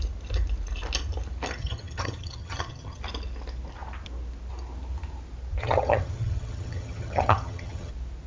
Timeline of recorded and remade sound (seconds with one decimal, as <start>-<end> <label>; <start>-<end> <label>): 0.0-1.6 recorded; 1.6-3.0 remade; 3.0-5.6 recorded; 5.6-7.9 remade; 7.9-8.3 recorded